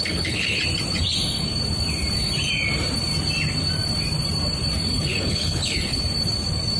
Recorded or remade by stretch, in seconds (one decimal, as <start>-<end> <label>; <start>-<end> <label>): 0.0-0.6 remade; 0.6-4.9 recorded; 4.9-6.0 remade; 6.0-6.8 recorded